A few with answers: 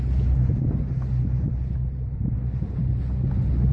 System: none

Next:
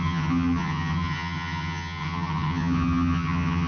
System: vocoder, HiFi-GAN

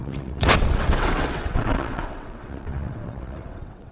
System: vocoder, WaveNeXt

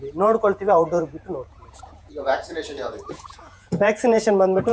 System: vocoder, Vocos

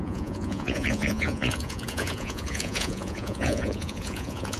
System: vocoder, Vocos